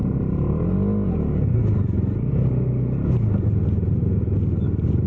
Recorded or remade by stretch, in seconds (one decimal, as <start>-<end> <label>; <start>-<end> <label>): 0.0-5.1 recorded